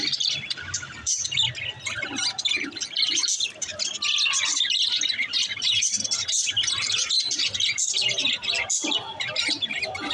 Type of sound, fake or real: real